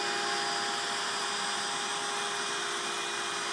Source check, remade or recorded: recorded